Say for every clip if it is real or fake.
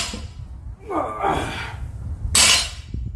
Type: real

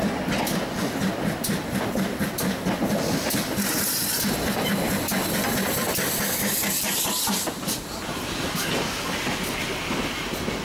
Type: real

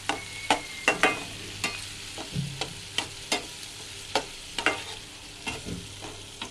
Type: real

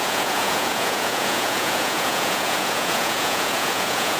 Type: fake